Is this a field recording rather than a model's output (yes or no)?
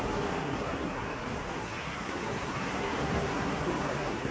no